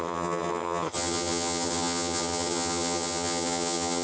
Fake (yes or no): yes